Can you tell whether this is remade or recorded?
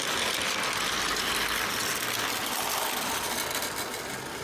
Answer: recorded